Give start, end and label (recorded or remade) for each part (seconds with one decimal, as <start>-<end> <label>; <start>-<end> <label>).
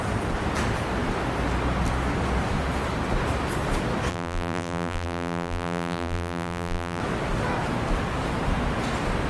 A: 0.0-4.1 recorded; 4.1-7.0 remade; 7.0-9.3 recorded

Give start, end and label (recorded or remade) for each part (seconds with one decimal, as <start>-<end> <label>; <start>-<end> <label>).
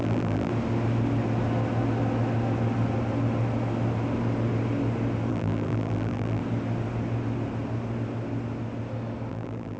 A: 0.0-0.5 remade; 0.5-5.3 recorded; 5.3-6.4 remade; 6.4-9.3 recorded; 9.3-9.8 remade